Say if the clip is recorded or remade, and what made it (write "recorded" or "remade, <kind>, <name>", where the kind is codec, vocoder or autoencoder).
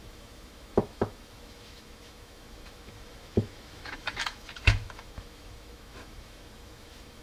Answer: remade, autoencoder, DAC-VAE